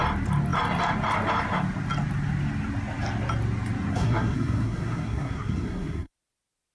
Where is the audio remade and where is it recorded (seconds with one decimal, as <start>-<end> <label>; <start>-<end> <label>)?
0.0-3.9 recorded; 3.9-6.1 remade; 6.1-6.7 recorded